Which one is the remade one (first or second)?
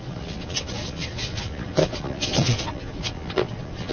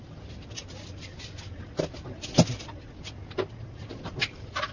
first